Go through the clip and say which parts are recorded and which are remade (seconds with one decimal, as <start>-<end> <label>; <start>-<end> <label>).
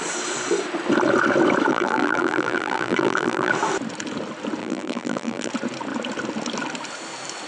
0.0-1.7 recorded; 1.7-3.5 remade; 3.5-4.6 recorded; 4.6-5.5 remade; 5.5-7.5 recorded